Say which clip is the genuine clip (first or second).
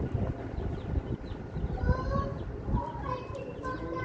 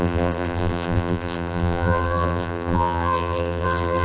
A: first